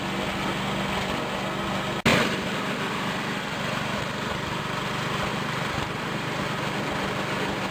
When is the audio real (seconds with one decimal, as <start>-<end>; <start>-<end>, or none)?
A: 0.0-2.1; 4.6-5.3; 6.4-7.7